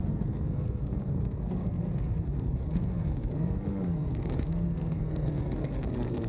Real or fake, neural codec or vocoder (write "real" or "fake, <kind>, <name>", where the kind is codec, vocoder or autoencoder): fake, codec, SNAC